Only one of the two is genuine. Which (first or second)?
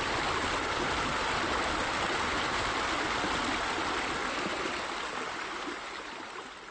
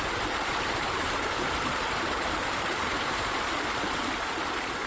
first